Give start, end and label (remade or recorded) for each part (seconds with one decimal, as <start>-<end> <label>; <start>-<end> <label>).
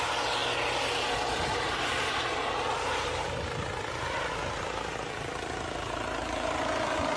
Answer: 0.0-7.2 recorded